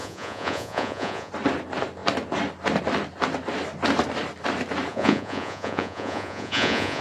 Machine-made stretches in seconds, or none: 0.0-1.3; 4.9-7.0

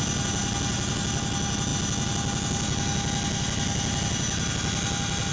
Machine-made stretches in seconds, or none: none